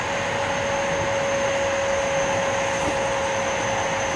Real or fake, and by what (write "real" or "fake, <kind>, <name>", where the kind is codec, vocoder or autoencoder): real